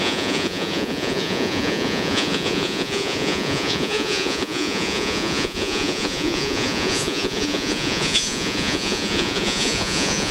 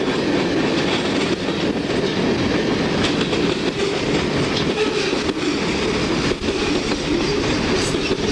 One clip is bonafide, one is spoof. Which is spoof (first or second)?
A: first